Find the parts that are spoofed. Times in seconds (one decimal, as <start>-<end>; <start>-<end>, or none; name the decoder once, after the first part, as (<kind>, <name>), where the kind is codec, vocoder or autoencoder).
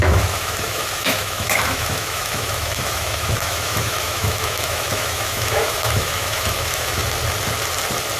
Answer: 0.0-7.0 (autoencoder, DAC-VAE)